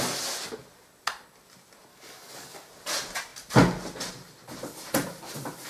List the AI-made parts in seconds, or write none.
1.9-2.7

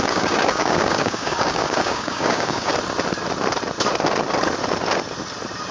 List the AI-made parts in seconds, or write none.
0.0-2.7